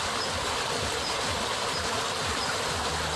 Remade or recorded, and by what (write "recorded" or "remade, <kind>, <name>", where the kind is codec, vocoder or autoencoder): recorded